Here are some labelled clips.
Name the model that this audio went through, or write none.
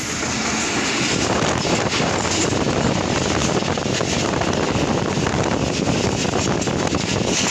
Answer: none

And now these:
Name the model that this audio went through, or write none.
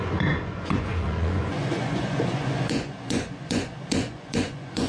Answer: vocoder, Vocos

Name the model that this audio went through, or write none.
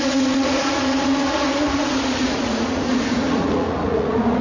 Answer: vocoder, Vocos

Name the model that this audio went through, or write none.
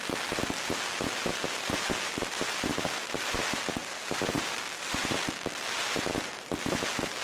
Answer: none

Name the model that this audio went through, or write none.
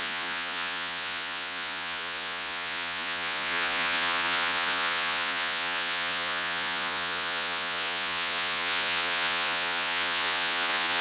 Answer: vocoder, Vocos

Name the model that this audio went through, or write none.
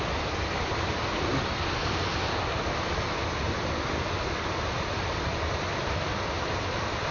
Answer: none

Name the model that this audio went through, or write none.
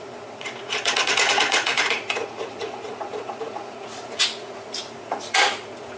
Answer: vocoder, Vocos